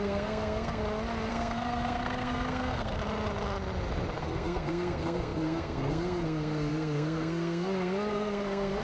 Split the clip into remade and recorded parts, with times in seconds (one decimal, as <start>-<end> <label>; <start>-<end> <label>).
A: 0.0-0.8 remade; 0.8-1.3 recorded; 1.3-3.0 remade; 3.0-4.2 recorded; 4.2-8.8 remade